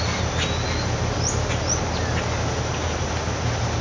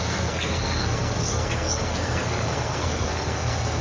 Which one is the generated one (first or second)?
second